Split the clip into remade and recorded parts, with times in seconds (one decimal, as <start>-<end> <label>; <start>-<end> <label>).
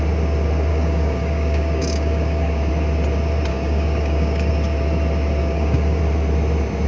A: 0.0-0.7 recorded; 0.7-2.7 remade; 2.7-3.5 recorded; 3.5-4.5 remade; 4.5-5.4 recorded; 5.4-6.0 remade; 6.0-6.9 recorded